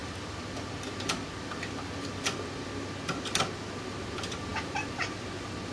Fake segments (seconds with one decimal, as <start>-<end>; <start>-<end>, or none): none